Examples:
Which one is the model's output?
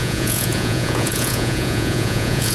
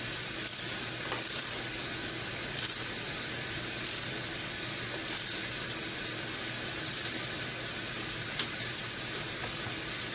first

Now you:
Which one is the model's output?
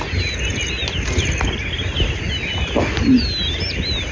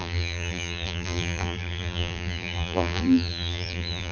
second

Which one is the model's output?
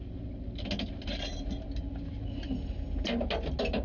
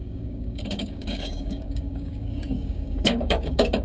second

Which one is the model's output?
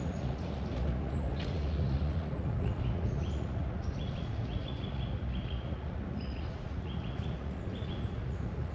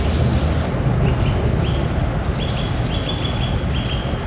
first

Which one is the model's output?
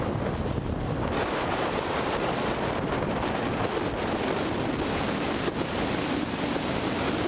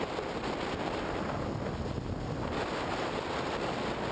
first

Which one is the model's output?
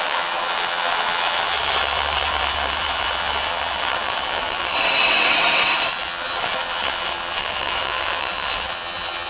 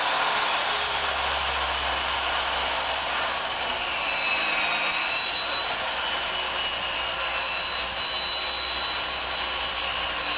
first